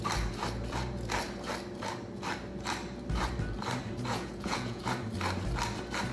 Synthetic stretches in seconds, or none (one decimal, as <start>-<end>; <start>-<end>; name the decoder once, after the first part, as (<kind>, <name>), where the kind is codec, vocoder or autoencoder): 4.1-4.8 (vocoder, Vocos)